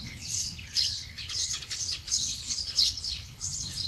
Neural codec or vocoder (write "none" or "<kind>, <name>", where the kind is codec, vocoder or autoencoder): codec, HILCodec